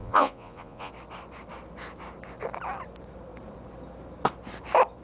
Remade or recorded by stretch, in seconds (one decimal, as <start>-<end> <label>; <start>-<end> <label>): 0.0-0.9 remade; 0.9-5.0 recorded